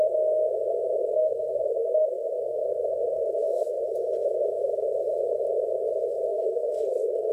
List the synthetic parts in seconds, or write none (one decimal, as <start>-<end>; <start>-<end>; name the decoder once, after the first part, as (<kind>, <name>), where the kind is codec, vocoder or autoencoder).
1.0-3.8 (codec, SNAC); 6.3-7.3